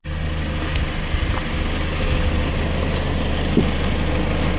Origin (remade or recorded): recorded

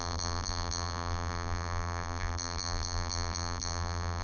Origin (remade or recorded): remade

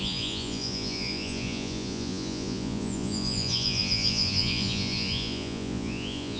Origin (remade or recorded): remade